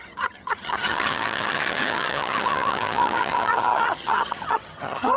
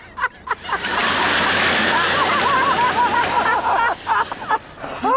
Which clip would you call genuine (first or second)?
second